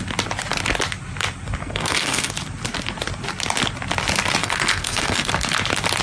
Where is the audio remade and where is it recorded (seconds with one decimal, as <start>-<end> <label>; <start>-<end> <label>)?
0.0-1.6 recorded; 1.6-2.3 remade; 2.3-4.4 recorded; 4.4-5.3 remade; 5.3-6.0 recorded